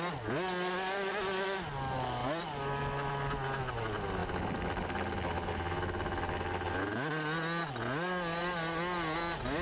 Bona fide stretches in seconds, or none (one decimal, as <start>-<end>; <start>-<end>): 0.0-9.6